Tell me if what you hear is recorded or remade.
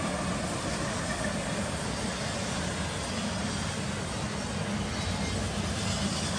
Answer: recorded